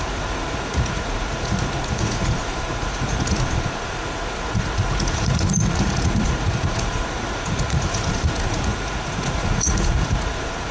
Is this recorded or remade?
remade